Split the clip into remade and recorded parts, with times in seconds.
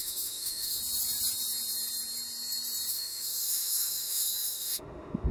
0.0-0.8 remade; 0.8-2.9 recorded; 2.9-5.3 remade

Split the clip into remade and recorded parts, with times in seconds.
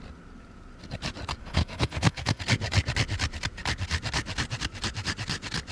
0.0-1.4 recorded; 1.4-2.4 remade; 2.4-5.7 recorded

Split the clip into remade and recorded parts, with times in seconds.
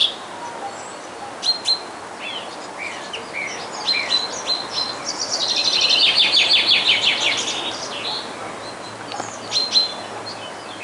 0.0-10.8 recorded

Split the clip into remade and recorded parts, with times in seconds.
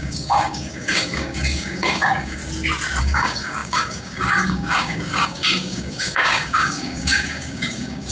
0.0-2.4 remade; 2.4-3.0 recorded; 3.0-8.1 remade